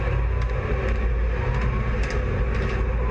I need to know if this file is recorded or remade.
recorded